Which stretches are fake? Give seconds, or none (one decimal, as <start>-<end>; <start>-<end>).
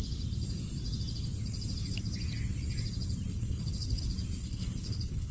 3.3-4.0; 4.4-5.3